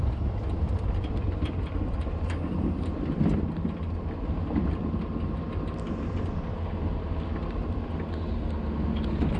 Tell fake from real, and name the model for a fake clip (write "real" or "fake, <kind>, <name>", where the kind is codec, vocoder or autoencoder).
real